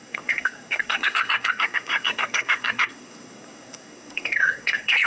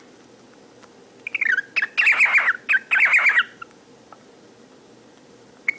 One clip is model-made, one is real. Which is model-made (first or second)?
first